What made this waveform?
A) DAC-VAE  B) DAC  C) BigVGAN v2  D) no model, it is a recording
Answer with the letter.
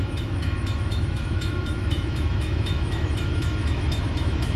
A